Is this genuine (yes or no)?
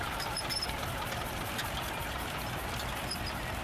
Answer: yes